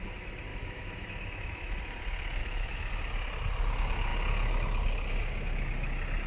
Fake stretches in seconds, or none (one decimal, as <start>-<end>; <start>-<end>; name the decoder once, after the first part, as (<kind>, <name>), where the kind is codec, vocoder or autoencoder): 0.5-1.8 (autoencoder, DAC-VAE); 2.4-2.9